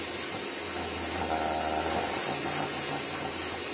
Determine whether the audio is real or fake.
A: real